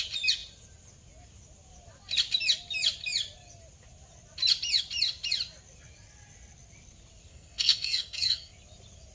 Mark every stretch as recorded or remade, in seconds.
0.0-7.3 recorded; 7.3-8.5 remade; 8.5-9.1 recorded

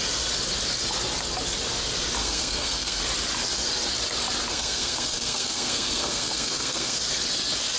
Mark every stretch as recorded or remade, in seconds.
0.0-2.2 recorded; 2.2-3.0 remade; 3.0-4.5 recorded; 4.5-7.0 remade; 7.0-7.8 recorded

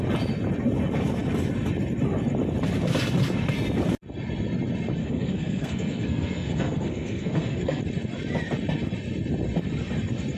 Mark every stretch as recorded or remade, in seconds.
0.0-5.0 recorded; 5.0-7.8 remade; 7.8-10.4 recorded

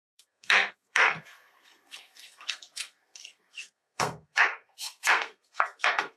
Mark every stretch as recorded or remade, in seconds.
0.0-6.2 remade